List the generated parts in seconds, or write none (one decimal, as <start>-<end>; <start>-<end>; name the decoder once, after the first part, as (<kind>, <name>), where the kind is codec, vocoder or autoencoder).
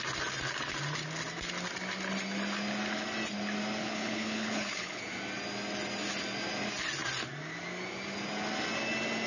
3.8-5.0 (codec, HILCodec)